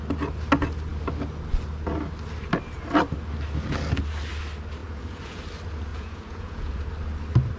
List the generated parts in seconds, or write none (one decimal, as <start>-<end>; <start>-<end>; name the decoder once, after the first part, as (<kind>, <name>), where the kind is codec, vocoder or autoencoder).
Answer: 4.8-5.4 (vocoder, Vocos); 5.9-6.9